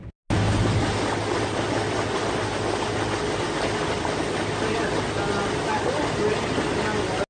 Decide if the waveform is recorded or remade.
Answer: recorded